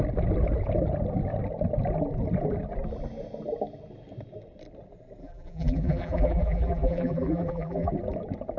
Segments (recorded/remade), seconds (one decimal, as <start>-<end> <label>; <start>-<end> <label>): 0.0-5.2 recorded; 5.2-7.9 remade; 7.9-8.6 recorded